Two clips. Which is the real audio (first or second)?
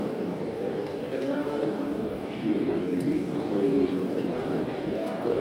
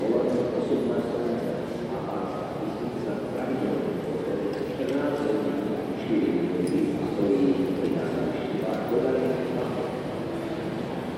second